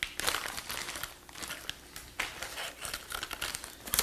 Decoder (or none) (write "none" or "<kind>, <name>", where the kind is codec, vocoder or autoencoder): none